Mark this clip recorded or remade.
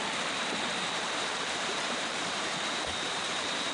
remade